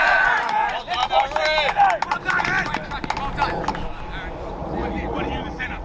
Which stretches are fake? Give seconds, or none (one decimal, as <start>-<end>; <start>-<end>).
0.0-1.0; 4.5-5.8